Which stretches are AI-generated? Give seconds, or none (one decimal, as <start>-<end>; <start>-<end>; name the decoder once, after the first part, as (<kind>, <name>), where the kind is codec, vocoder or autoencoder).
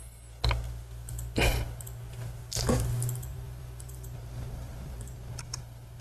3.3-5.6 (vocoder, BigVGAN v2)